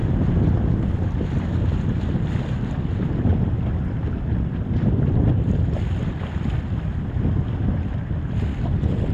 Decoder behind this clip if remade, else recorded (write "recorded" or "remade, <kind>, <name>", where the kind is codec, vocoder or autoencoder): recorded